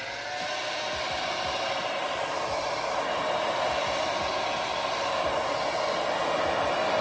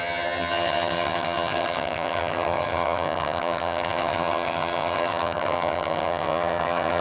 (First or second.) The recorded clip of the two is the first